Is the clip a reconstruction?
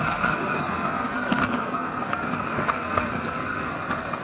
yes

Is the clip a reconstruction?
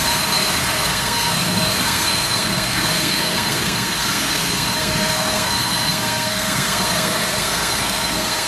yes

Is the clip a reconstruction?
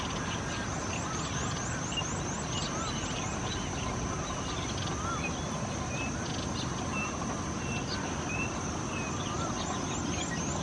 no